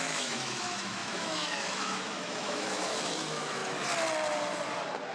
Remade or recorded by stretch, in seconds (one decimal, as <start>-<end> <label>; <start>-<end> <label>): 0.0-3.6 remade; 3.6-5.1 recorded